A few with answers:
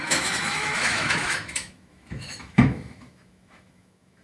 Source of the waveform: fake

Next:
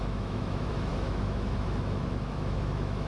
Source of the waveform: fake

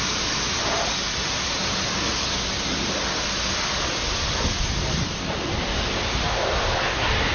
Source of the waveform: real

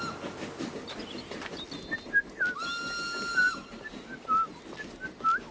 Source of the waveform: real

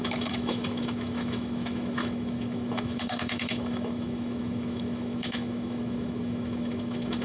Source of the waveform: fake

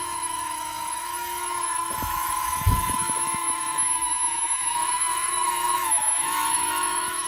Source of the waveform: fake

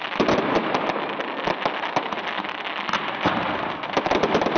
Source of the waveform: real